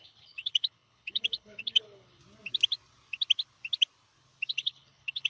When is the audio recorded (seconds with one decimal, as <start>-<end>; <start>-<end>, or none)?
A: 2.2-4.5